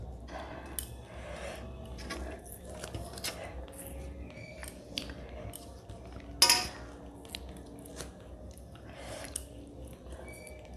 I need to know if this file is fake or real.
real